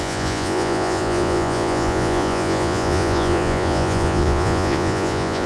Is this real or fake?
fake